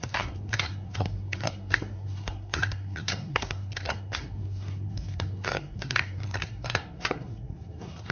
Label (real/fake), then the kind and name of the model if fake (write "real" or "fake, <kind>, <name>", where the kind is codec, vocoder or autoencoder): fake, codec, SNAC